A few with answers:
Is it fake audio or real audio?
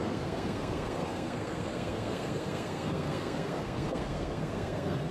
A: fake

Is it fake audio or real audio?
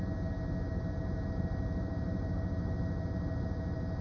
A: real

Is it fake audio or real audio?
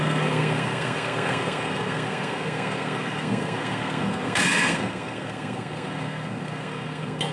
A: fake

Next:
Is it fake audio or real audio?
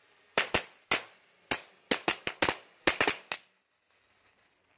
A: real